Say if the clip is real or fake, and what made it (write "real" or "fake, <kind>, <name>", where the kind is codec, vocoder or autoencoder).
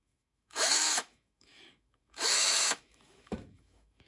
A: fake, autoencoder, DAC-VAE